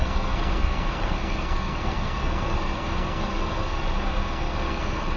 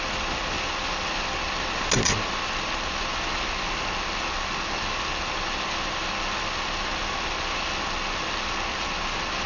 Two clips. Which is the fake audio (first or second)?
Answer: first